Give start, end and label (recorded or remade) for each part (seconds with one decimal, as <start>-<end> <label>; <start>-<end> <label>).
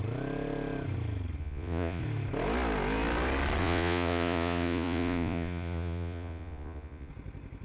0.0-1.4 recorded; 1.4-2.0 remade; 2.0-3.6 recorded; 3.6-7.1 remade; 7.1-7.6 recorded